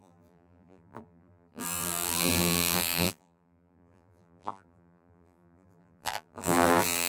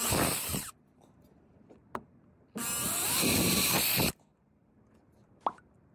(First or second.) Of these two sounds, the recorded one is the second